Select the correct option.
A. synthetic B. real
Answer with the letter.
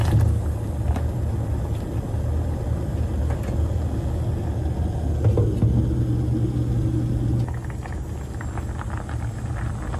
B